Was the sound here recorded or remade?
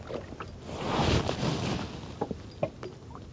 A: recorded